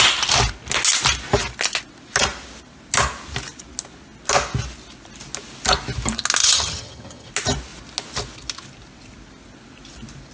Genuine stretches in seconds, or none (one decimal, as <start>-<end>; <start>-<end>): 0.0-6.4; 7.3-10.3